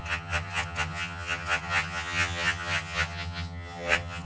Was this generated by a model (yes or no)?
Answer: yes